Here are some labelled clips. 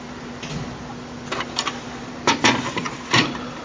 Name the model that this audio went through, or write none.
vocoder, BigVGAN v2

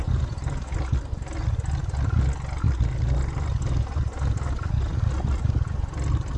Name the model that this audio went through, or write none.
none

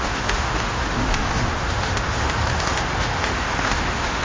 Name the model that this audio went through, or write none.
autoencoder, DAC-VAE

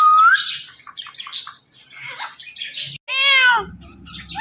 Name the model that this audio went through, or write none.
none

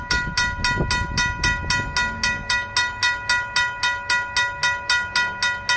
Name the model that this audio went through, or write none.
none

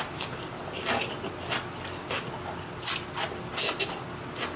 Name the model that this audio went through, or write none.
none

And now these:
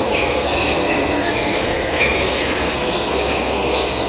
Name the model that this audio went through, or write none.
codec, SNAC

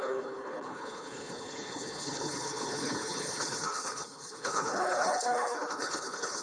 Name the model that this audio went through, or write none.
codec, HILCodec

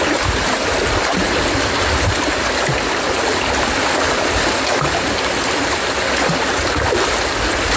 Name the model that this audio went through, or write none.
none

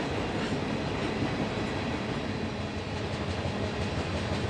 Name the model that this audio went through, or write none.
none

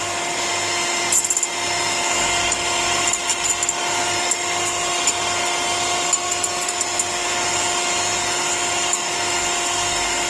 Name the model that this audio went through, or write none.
none